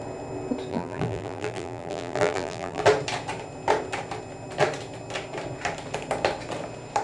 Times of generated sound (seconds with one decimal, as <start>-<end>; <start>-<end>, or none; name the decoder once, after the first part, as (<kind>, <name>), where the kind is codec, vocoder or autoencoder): 0.7-2.8 (vocoder, BigVGAN v2)